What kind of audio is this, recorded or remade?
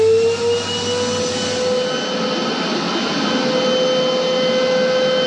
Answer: recorded